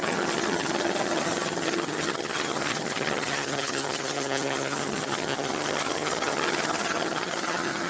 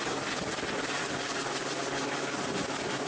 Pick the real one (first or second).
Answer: second